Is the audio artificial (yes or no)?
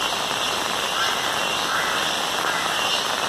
no